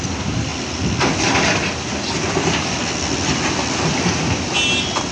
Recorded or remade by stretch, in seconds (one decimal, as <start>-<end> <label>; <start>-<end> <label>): 0.0-5.1 recorded